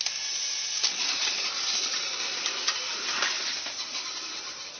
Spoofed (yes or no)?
no